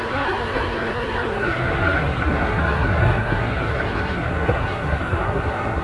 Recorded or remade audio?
remade